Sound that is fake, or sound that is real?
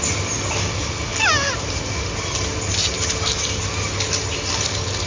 real